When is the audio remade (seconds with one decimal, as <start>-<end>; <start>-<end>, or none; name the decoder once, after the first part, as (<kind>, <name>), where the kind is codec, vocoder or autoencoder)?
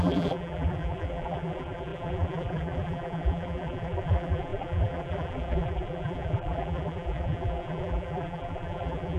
0.0-9.2 (vocoder, BigVGAN v2)